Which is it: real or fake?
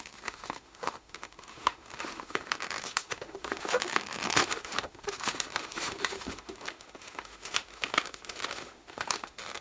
fake